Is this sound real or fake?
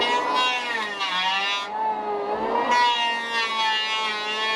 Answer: real